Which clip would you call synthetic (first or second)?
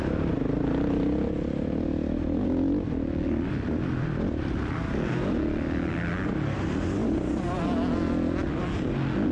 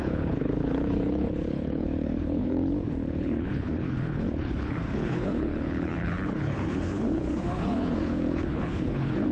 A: second